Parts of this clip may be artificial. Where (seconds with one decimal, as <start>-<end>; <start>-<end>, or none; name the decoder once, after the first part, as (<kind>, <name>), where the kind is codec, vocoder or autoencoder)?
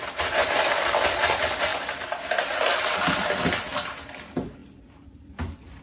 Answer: 4.6-5.8 (vocoder, BigVGAN v2)